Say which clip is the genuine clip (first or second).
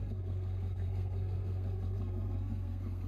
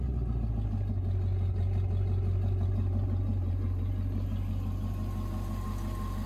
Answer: second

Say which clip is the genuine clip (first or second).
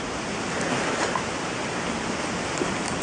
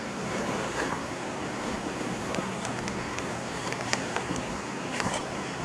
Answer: first